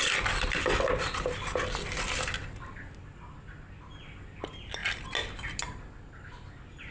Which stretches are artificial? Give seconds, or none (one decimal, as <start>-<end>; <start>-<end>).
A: none